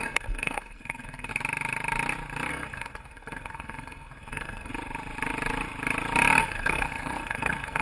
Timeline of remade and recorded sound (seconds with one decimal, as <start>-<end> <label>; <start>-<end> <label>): 0.0-1.3 remade; 1.3-2.5 recorded; 2.5-4.7 remade; 4.7-6.4 recorded; 6.4-7.8 remade